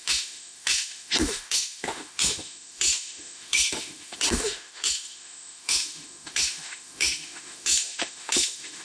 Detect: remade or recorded remade